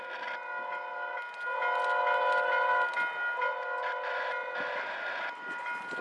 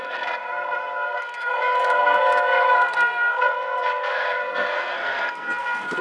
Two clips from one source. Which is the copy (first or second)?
second